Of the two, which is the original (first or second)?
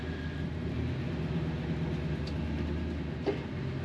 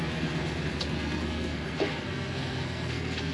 first